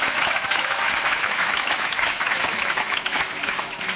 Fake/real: fake